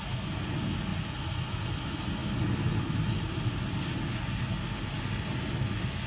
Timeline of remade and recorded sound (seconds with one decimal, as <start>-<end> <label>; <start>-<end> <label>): 0.0-6.1 recorded